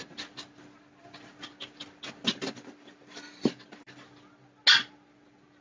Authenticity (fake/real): real